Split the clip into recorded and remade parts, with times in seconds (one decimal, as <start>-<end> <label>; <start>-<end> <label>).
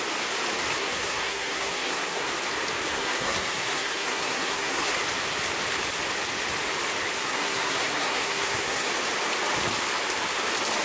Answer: 0.0-0.8 recorded; 0.8-2.3 remade; 2.3-2.9 recorded; 2.9-5.0 remade; 5.0-7.2 recorded; 7.2-8.9 remade; 8.9-10.8 recorded